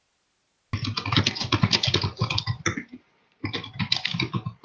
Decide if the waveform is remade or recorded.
recorded